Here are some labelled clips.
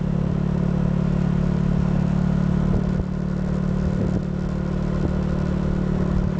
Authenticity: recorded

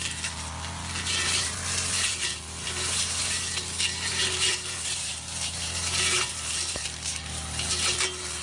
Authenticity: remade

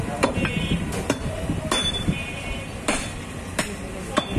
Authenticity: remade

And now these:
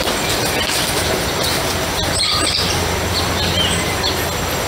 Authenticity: recorded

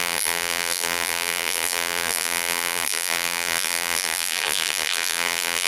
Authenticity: remade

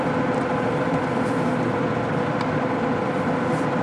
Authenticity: remade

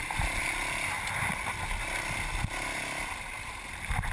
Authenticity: recorded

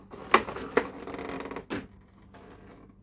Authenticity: recorded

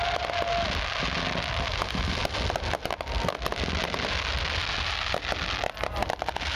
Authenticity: recorded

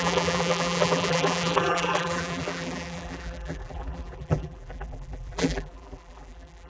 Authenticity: remade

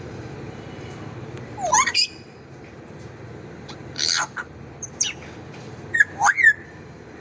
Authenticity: remade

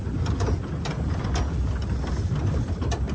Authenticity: recorded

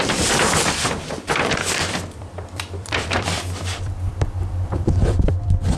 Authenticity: remade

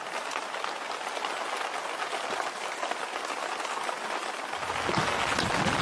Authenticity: recorded